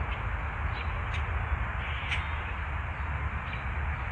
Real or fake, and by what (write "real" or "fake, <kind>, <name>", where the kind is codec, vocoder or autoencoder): real